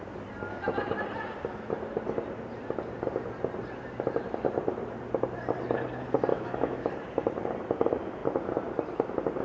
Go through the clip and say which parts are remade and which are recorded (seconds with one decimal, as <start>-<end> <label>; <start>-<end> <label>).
0.0-6.3 recorded; 6.3-6.9 remade; 6.9-9.4 recorded